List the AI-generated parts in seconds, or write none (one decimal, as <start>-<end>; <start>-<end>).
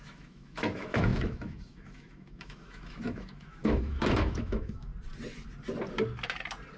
0.0-4.9